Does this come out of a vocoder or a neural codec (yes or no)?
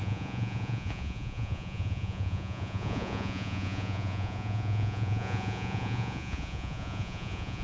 yes